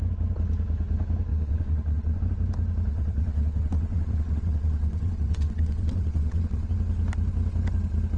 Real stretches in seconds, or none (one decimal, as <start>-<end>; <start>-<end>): 0.0-1.3; 2.2-2.9; 6.7-8.2